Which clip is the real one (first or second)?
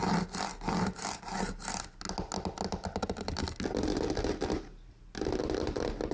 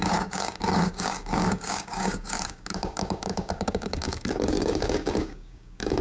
first